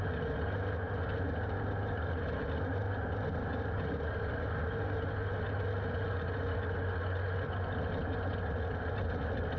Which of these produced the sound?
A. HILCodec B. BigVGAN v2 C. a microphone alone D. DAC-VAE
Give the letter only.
C